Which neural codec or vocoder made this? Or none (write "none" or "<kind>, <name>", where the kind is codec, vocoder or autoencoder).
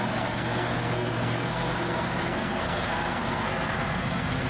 codec, SNAC